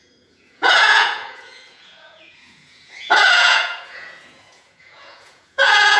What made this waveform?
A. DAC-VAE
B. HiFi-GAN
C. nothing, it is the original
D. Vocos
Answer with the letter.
D